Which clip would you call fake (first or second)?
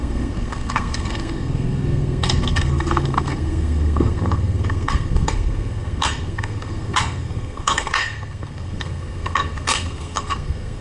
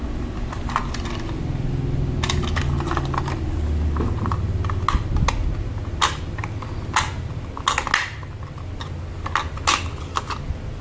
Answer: first